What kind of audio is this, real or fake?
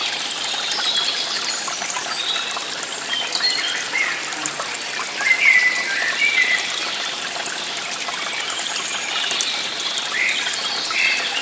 real